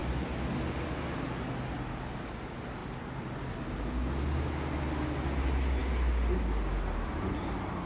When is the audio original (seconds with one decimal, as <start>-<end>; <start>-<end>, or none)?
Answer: 0.0-7.9